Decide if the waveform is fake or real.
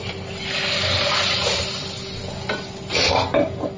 real